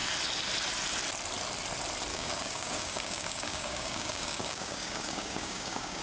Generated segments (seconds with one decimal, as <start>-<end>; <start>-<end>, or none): 2.1-6.0